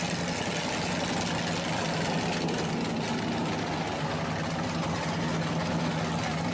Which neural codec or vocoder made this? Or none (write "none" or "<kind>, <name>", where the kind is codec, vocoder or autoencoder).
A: none